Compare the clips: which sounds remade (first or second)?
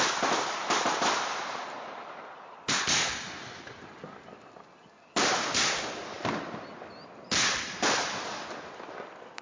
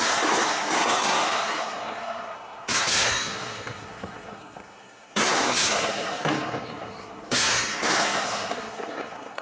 second